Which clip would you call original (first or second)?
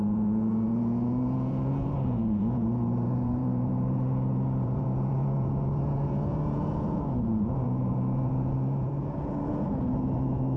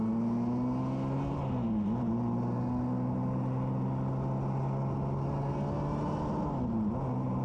second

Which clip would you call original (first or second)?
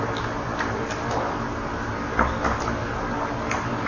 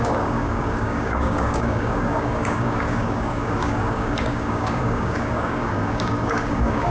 first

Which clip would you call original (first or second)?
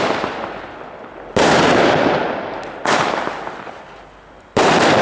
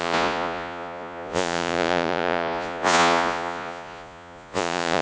first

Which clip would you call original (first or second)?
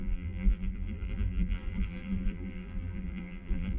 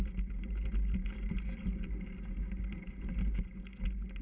second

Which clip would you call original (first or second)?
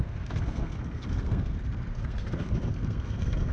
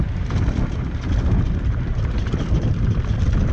second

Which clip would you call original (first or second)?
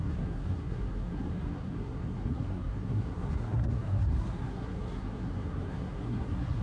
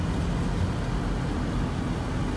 second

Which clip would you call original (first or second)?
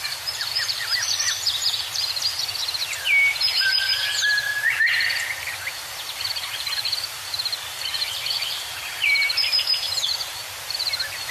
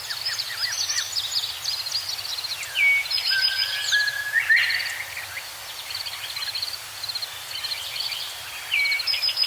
second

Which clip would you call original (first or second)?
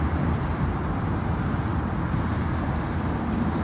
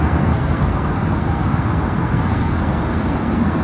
first